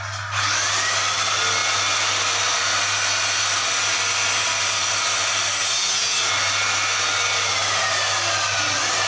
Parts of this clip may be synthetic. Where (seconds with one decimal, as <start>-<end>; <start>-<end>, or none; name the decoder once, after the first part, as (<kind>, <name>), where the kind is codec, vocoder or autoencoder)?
none